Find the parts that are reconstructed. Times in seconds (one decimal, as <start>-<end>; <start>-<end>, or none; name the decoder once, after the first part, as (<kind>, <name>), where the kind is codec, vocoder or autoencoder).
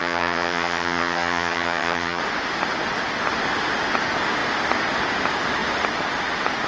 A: 0.0-2.2 (vocoder, HiFi-GAN)